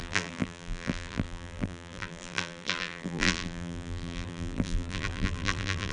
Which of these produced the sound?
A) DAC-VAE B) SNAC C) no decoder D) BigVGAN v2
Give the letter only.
D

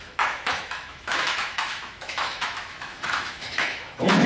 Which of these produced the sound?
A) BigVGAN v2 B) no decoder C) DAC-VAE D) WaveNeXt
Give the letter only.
C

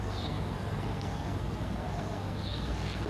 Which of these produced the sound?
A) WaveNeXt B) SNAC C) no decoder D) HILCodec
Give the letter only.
B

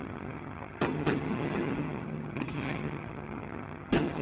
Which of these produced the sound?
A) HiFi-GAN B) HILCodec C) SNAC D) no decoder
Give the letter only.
A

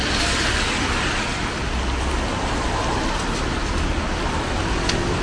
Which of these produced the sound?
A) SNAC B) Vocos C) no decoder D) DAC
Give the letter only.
C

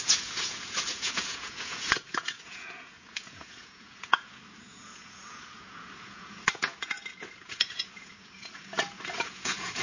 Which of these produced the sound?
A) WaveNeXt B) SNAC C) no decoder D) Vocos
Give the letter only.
D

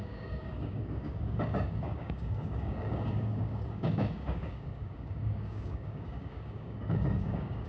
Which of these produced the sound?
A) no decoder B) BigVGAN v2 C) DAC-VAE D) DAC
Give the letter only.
D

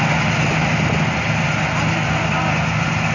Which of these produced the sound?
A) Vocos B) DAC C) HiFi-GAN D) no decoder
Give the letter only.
D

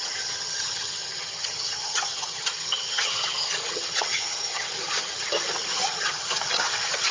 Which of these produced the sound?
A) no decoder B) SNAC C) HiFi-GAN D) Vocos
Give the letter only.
C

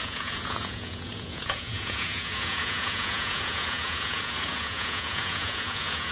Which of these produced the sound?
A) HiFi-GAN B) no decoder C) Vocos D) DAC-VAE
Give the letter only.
C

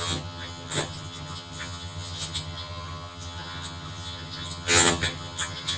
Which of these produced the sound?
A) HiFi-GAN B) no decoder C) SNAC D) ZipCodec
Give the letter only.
A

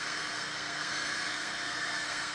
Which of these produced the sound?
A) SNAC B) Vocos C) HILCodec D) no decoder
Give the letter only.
A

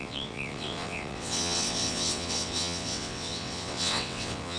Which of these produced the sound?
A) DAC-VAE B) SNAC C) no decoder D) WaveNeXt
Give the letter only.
D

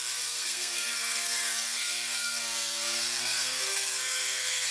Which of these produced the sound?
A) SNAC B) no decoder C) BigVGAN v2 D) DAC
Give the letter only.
A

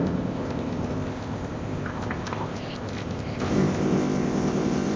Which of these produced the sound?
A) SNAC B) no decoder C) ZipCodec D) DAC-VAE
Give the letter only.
C